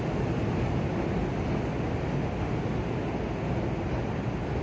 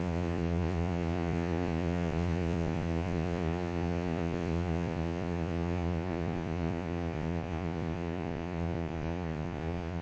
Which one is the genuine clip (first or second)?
first